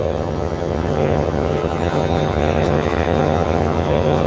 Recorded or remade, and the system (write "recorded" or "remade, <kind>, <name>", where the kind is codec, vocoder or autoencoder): remade, vocoder, HiFi-GAN